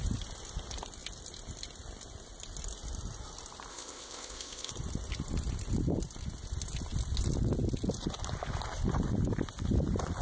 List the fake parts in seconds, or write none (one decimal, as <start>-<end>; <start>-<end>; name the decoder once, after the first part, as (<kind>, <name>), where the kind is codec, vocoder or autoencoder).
3.7-4.7 (codec, ZipCodec)